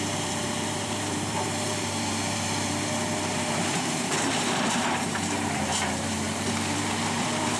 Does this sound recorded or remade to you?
remade